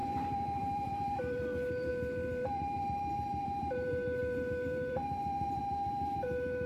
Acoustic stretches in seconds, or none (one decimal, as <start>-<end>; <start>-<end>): none